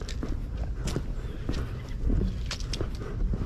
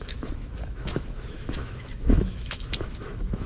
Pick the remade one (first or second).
second